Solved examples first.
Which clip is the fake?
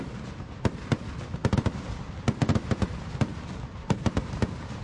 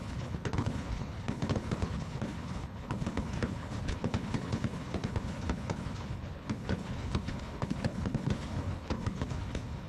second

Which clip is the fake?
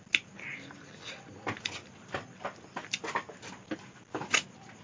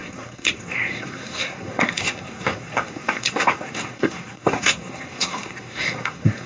second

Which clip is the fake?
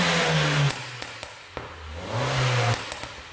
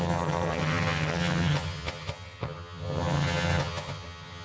second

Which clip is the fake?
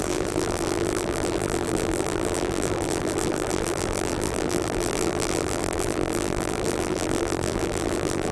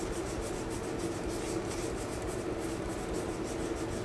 first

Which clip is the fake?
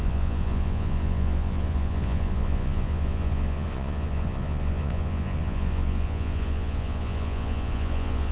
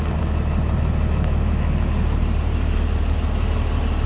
first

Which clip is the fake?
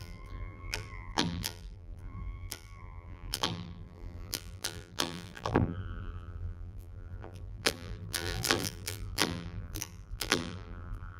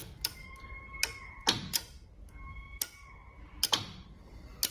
first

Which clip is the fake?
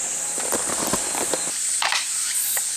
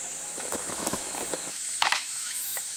second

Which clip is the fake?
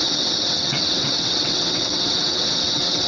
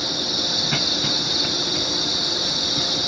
first